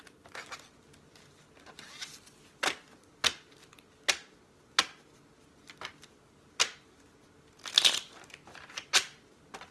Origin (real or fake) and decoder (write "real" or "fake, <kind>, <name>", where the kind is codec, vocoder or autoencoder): real